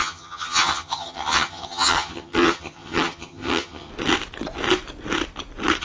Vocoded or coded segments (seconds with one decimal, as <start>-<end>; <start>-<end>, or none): 0.0-3.9